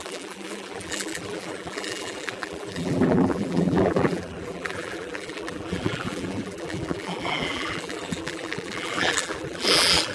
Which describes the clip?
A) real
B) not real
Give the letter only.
B